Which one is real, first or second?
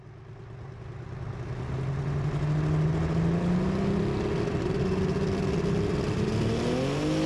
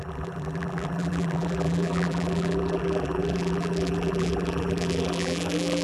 first